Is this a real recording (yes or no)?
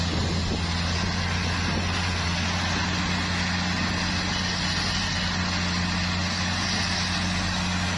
yes